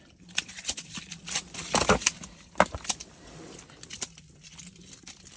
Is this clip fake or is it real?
real